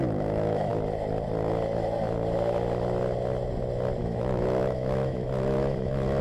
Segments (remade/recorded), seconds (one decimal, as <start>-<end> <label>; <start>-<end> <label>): 0.0-0.7 remade; 0.7-4.0 recorded; 4.0-6.2 remade